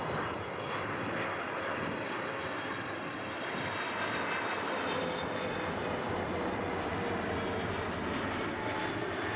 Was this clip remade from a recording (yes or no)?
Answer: yes